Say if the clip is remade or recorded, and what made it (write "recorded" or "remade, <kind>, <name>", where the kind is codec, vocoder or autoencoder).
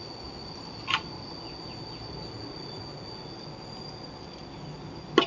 recorded